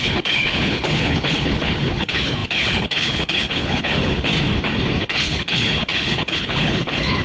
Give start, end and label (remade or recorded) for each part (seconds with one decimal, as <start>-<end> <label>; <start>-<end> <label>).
0.0-4.3 remade; 4.3-5.0 recorded; 5.0-7.2 remade